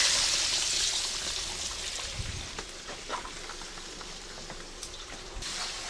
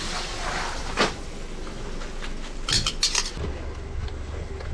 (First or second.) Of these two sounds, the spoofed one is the first